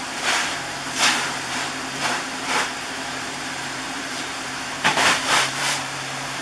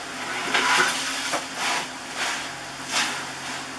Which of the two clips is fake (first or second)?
first